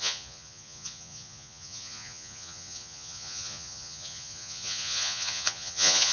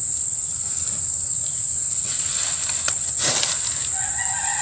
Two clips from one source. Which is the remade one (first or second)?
first